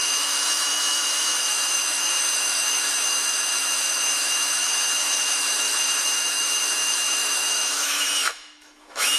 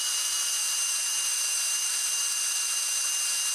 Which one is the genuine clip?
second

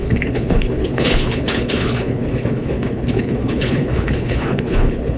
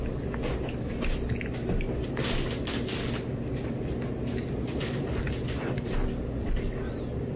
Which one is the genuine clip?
second